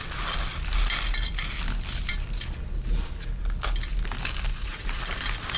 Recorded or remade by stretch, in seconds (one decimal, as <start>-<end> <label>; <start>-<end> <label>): 0.0-4.5 recorded; 4.5-5.0 remade; 5.0-5.6 recorded

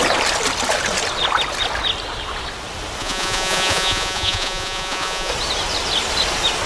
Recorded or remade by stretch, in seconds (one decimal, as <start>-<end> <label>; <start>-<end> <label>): 0.0-3.0 recorded; 3.0-5.3 remade; 5.3-6.7 recorded

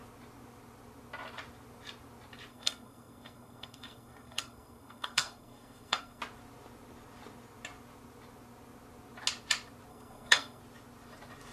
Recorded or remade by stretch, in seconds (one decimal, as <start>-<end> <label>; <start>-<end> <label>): 0.0-2.5 recorded; 2.5-6.2 remade; 6.2-9.9 recorded; 9.9-10.6 remade; 10.6-11.5 recorded

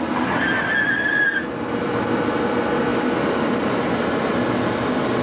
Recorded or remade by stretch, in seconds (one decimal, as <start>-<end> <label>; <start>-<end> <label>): 0.0-5.2 recorded

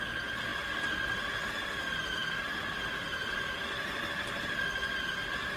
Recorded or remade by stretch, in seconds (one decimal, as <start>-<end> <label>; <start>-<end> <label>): 0.0-5.6 recorded

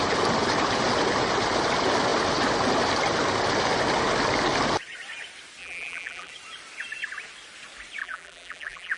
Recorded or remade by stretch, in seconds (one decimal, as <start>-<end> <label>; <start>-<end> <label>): 0.0-5.6 recorded; 5.6-6.3 remade; 6.3-8.0 recorded; 8.0-9.0 remade

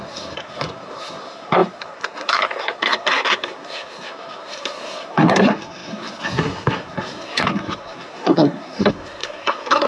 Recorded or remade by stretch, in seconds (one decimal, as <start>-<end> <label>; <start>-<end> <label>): 0.0-9.9 remade